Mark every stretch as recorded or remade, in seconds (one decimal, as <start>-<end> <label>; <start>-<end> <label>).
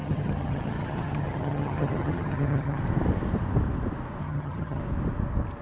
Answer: 0.0-2.8 remade; 2.8-4.2 recorded; 4.2-4.8 remade; 4.8-5.6 recorded